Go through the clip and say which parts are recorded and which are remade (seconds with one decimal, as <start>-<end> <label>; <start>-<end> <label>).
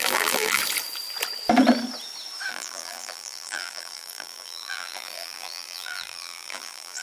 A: 0.0-0.6 remade; 0.6-2.5 recorded; 2.5-7.0 remade